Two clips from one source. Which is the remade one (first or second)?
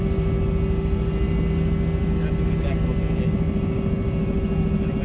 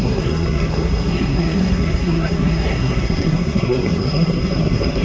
second